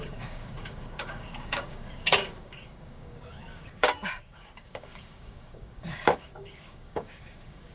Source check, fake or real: fake